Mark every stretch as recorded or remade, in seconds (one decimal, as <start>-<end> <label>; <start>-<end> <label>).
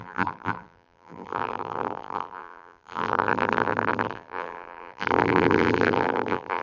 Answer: 0.0-6.6 remade